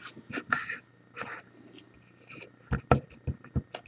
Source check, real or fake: real